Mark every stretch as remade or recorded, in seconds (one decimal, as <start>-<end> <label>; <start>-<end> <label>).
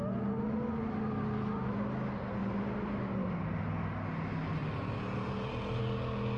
0.0-6.4 recorded